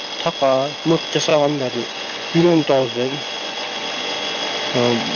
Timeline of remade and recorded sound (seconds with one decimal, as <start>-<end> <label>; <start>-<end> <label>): 0.0-1.3 recorded; 1.3-4.4 remade; 4.4-5.2 recorded